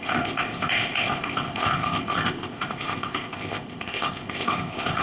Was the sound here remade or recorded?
remade